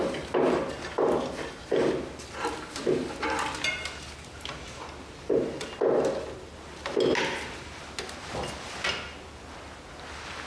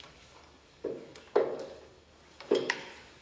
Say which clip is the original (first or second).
first